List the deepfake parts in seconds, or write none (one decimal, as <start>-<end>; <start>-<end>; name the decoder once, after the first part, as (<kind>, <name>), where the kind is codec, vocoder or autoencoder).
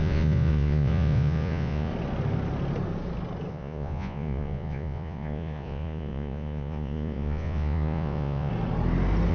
0.0-1.9 (vocoder, Vocos); 3.5-8.5